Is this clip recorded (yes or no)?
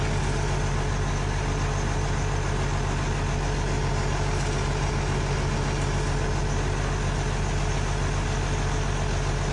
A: yes